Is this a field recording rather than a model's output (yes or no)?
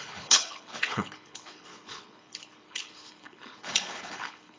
no